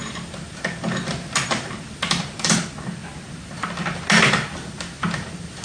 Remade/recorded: recorded